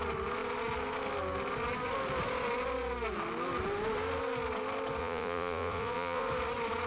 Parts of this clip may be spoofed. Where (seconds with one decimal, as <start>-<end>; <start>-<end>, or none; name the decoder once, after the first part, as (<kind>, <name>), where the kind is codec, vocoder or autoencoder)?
5.0-6.2 (vocoder, Vocos)